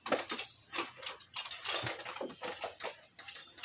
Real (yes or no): yes